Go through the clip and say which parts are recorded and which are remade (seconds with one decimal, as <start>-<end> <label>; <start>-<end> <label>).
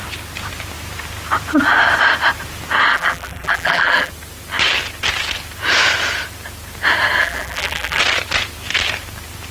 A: 0.0-2.9 recorded; 2.9-4.1 remade; 4.1-7.2 recorded; 7.2-8.0 remade; 8.0-9.5 recorded